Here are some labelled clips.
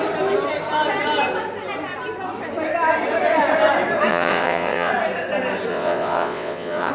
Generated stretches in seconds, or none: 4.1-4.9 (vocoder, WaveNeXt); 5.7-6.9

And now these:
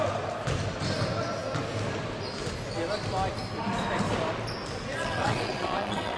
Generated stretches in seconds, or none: 5.0-6.2 (vocoder, WaveNeXt)